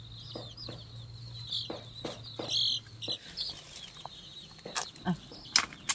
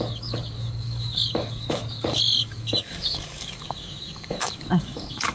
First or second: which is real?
first